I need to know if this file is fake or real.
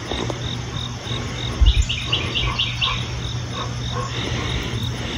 real